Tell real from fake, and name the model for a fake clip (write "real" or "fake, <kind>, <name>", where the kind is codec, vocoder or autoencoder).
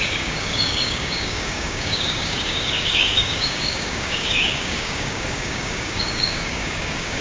fake, codec, DAC